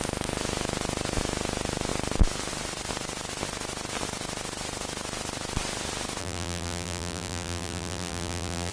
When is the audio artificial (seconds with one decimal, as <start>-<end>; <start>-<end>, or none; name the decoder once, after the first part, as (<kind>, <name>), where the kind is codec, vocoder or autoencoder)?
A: 6.2-8.7 (vocoder, BigVGAN v2)